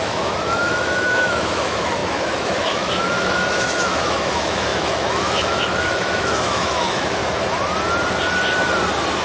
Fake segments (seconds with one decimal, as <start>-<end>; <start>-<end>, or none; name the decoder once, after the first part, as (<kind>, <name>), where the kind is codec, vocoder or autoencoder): 0.0-7.2 (autoencoder, DAC-VAE)